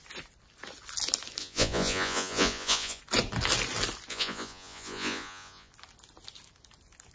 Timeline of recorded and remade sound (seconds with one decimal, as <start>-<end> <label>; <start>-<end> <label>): 0.0-1.4 recorded; 1.4-3.0 remade; 3.0-4.1 recorded; 4.1-5.7 remade; 5.7-7.1 recorded